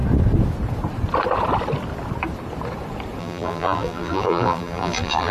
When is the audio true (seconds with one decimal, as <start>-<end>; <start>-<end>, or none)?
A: 0.0-3.2